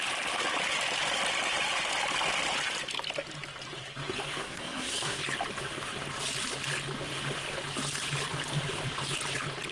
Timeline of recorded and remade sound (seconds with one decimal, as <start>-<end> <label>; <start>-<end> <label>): 0.0-4.4 recorded; 4.4-5.2 remade; 5.2-9.7 recorded